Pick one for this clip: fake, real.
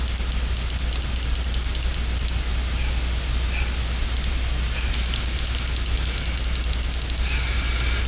real